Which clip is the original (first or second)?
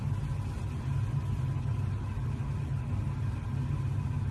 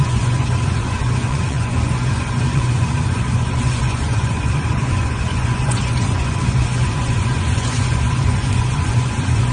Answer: first